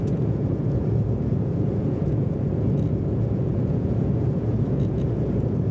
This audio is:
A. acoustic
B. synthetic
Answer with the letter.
B